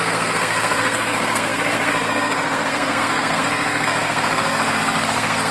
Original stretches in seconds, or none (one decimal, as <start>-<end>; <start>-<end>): none